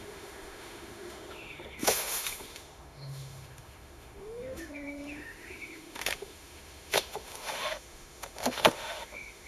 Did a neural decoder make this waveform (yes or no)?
yes